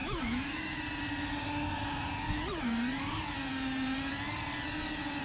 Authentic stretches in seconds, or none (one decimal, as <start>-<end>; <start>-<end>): 0.8-5.2